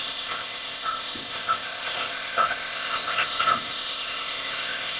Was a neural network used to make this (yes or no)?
yes